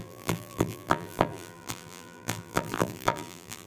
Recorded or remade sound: remade